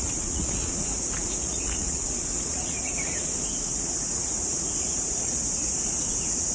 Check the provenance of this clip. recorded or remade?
remade